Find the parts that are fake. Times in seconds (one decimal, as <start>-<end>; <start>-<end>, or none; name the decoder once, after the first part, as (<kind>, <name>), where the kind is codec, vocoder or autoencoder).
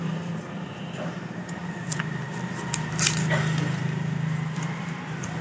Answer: 0.0-1.6 (vocoder, BigVGAN v2); 4.8-5.4